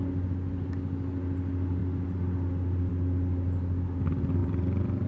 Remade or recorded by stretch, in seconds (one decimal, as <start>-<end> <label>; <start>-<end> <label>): 0.0-5.1 recorded